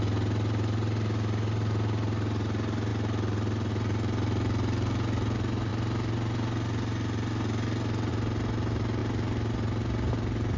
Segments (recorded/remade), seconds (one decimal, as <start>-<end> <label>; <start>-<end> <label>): 0.0-10.6 recorded

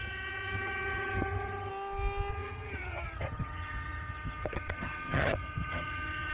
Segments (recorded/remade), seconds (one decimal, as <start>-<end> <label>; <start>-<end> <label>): 0.0-1.7 remade; 1.7-2.3 recorded; 2.3-6.3 remade